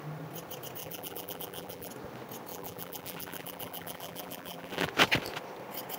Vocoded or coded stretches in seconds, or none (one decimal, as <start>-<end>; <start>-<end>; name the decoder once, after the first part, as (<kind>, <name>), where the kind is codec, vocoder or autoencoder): 0.8-1.9 (vocoder, BigVGAN v2); 2.5-4.9